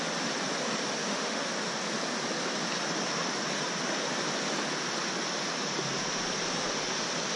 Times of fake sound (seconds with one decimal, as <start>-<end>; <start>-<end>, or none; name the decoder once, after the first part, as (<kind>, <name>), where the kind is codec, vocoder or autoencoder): 1.0-1.5 (autoencoder, DAC-VAE)